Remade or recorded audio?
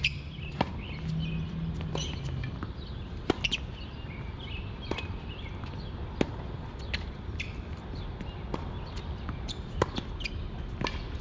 recorded